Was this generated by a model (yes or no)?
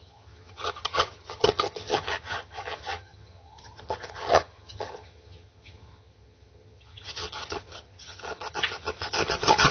yes